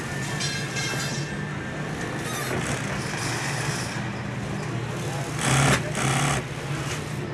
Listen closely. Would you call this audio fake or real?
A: real